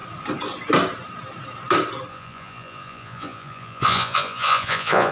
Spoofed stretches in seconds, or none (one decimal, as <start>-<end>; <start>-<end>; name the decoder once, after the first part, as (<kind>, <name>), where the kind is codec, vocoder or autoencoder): 2.1-5.1 (vocoder, Vocos)